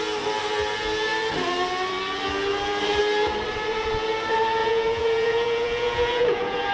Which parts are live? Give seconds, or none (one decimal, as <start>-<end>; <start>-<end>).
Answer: 0.0-4.6